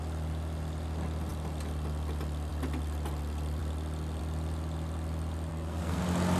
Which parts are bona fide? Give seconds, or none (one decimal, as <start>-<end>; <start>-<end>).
0.0-5.5; 6.0-6.4